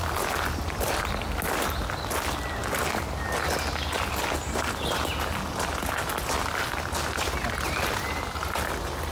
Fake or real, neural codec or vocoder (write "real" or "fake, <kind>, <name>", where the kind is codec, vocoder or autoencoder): real